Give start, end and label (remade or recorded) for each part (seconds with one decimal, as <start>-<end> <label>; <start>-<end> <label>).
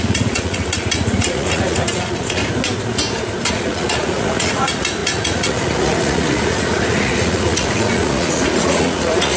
0.0-2.4 remade; 2.4-3.5 recorded; 3.5-9.4 remade